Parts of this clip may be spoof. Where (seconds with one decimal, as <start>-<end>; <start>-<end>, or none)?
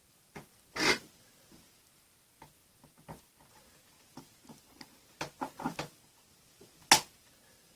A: none